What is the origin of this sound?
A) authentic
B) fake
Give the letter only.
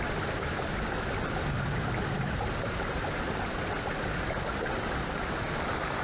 A